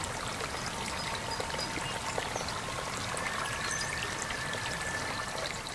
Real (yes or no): yes